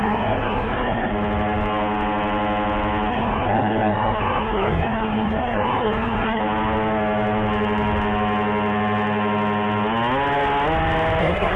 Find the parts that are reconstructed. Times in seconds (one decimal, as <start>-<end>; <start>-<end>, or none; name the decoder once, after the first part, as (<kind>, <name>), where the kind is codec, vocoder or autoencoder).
0.0-1.1 (codec, SNAC); 3.1-6.4; 11.2-11.6